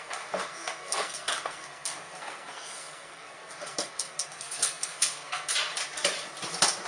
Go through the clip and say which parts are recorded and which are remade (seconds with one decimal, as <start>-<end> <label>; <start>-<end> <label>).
0.0-5.5 remade; 5.5-6.9 recorded